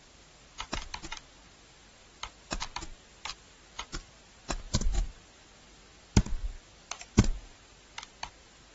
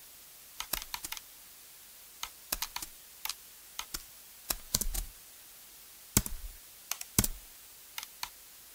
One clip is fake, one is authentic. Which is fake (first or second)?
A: first